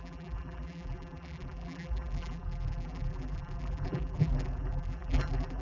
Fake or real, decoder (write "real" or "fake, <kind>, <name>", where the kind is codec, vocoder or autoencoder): fake, vocoder, BigVGAN v2